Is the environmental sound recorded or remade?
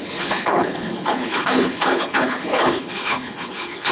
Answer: remade